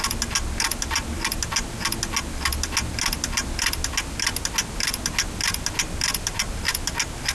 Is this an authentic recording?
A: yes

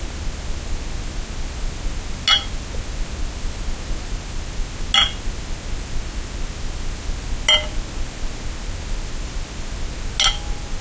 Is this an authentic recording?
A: yes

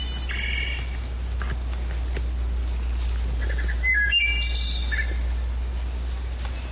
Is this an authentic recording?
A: yes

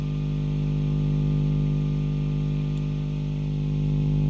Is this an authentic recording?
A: no